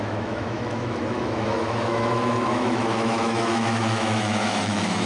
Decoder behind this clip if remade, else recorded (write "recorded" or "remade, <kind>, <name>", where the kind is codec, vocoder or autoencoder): remade, autoencoder, DAC-VAE